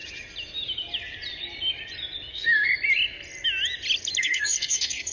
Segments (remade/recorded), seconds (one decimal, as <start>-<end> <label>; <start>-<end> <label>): 0.0-2.3 recorded; 2.3-2.7 remade; 2.7-4.2 recorded; 4.2-5.1 remade

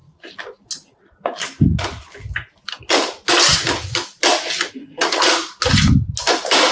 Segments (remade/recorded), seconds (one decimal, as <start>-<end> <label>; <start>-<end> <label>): 0.0-4.8 recorded; 4.8-5.3 remade; 5.3-6.7 recorded

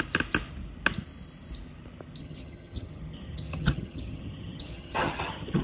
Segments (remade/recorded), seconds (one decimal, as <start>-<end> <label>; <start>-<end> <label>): 0.0-2.2 recorded; 2.2-5.6 remade

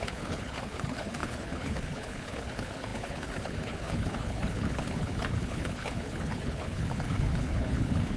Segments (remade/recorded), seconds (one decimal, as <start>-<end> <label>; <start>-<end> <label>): 0.0-8.2 remade

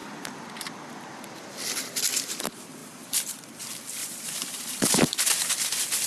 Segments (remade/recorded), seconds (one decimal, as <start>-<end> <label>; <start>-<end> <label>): 0.0-4.0 recorded; 4.0-5.5 remade; 5.5-6.1 recorded

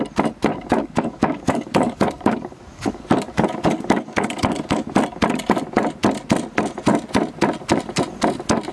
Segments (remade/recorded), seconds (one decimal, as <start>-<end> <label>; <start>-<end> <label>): 0.0-0.5 recorded; 0.5-4.9 remade; 4.9-8.7 recorded